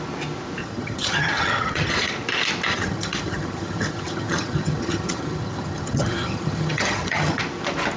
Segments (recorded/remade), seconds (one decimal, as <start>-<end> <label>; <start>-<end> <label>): 0.0-0.6 recorded; 0.6-2.1 remade; 2.1-2.7 recorded; 2.7-7.4 remade; 7.4-8.0 recorded